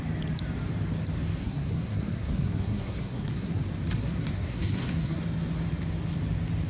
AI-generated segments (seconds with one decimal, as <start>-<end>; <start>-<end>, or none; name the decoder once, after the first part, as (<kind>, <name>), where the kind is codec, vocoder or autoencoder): 1.4-3.6 (codec, SNAC); 4.0-5.2